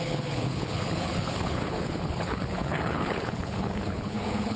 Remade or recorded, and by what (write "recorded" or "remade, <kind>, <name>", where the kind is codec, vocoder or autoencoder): remade, codec, HILCodec